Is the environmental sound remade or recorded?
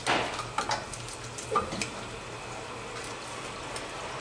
recorded